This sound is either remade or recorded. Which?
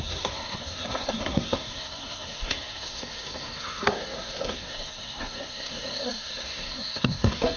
remade